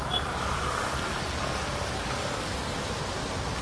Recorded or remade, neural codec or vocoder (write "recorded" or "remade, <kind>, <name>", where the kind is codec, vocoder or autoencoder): recorded